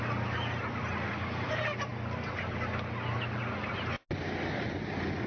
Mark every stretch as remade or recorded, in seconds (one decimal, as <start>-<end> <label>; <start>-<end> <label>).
0.0-5.3 recorded